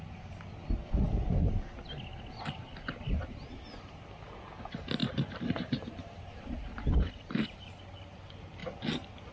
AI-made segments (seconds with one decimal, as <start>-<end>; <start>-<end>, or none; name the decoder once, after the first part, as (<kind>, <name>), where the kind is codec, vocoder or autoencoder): 5.0-7.8 (vocoder, BigVGAN v2)